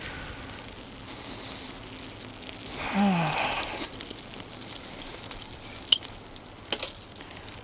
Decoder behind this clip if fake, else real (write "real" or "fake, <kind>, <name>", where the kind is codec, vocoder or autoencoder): real